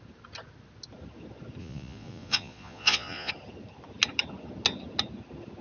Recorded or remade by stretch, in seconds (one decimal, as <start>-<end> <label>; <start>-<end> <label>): 0.0-1.6 recorded; 1.6-3.3 remade; 3.3-5.6 recorded